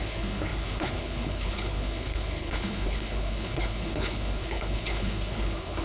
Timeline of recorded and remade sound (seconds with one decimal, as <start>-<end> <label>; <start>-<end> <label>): 0.0-5.8 remade